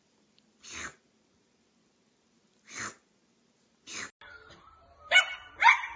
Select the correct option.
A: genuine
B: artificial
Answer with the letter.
A